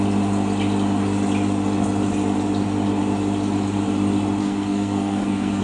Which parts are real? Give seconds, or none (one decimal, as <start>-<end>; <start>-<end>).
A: 0.0-4.4